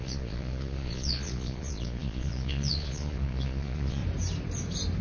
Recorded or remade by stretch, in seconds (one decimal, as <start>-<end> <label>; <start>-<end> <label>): 0.0-4.0 remade; 4.0-5.0 recorded